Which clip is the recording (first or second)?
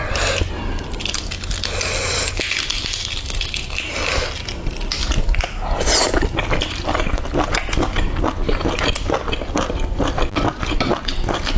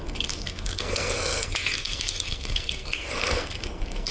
first